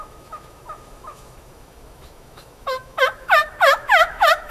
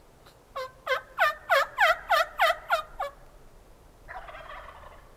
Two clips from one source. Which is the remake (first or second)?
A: first